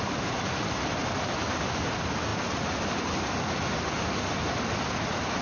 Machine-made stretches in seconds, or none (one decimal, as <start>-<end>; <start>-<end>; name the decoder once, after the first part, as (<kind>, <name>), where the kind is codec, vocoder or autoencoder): none